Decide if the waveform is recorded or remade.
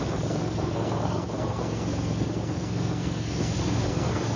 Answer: remade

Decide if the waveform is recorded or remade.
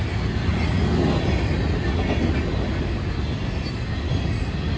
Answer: recorded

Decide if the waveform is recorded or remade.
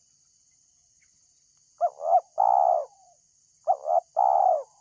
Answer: recorded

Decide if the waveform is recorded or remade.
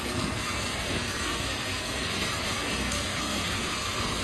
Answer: remade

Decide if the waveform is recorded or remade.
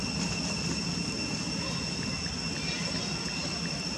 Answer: recorded